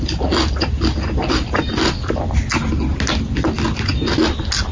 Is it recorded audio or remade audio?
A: recorded